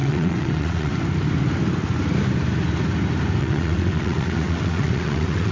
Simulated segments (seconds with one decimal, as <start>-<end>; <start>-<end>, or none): 0.0-0.9; 3.4-5.5